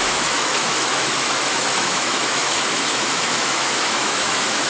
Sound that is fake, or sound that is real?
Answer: fake